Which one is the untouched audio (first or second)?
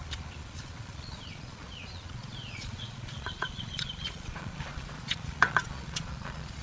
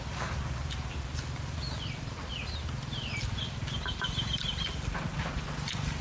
second